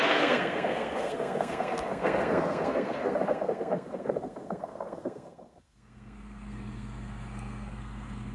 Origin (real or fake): fake